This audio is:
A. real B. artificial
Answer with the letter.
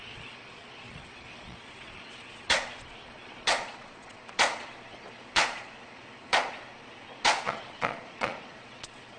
B